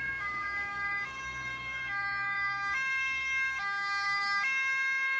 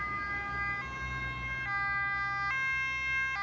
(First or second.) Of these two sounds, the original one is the second